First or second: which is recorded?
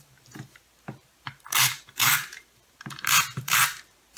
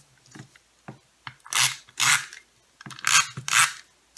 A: second